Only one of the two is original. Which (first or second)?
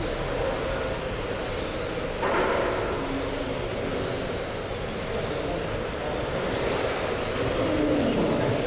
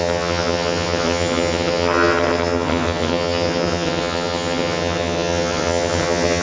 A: first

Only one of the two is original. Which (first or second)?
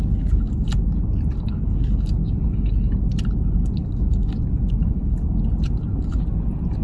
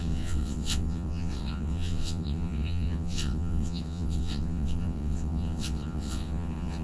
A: first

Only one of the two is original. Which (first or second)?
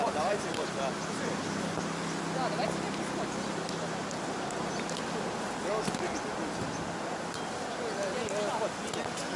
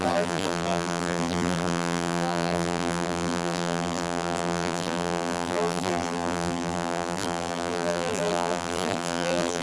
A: first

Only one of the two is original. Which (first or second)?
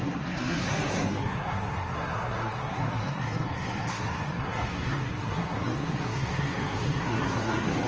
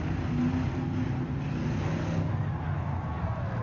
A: second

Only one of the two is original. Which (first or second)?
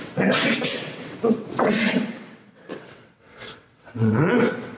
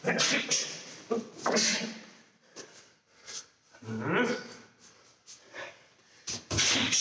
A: second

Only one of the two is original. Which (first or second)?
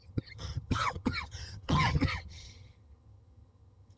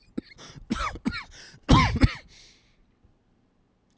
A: second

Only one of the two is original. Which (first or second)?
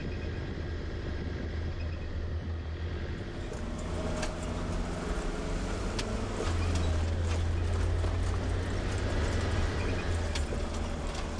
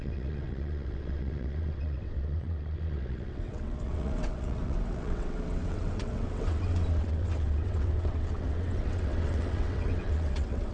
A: first